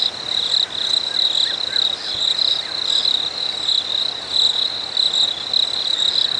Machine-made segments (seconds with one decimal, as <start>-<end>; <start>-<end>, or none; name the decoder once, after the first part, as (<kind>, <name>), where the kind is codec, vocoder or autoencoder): none